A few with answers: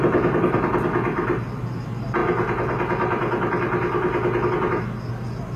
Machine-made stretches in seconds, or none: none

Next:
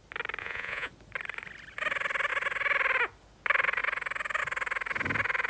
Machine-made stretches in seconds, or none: 0.4-0.9 (vocoder, Vocos)

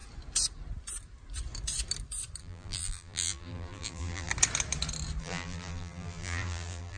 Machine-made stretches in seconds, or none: 2.4-4.3 (vocoder, BigVGAN v2); 5.2-7.0

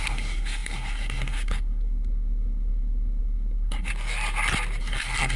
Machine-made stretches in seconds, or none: 0.0-3.9 (codec, SNAC); 4.8-5.4

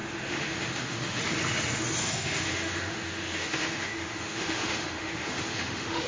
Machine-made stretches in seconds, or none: 0.0-1.2 (autoencoder, DAC-VAE); 2.0-6.1

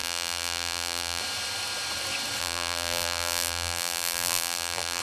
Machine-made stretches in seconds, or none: 0.0-1.2 (vocoder, BigVGAN v2); 2.4-5.0

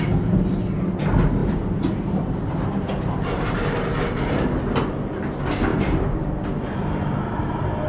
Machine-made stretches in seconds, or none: 1.4-4.8 (vocoder, BigVGAN v2); 5.7-6.2